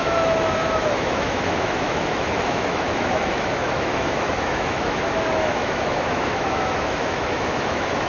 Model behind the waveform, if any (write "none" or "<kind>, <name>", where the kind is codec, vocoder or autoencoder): autoencoder, DAC-VAE